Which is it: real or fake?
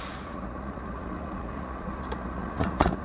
fake